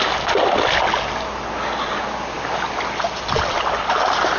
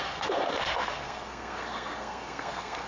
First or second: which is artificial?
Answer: second